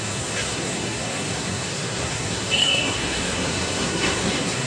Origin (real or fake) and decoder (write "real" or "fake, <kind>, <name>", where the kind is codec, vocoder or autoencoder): fake, codec, SNAC